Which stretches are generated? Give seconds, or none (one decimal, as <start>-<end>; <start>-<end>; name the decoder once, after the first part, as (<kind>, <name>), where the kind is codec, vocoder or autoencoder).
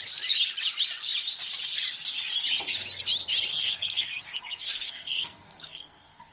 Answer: 3.5-6.3 (codec, SNAC)